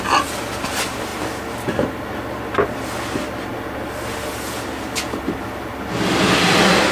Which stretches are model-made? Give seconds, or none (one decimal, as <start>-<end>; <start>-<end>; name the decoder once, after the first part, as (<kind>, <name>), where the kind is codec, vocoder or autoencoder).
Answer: none